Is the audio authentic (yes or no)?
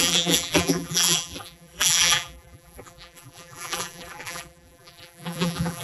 no